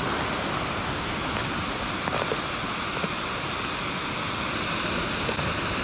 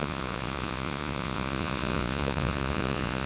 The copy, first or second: second